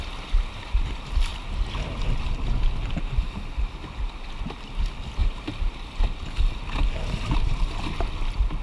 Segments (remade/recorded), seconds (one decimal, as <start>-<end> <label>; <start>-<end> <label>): 0.0-5.2 recorded; 5.2-5.7 remade; 5.7-8.6 recorded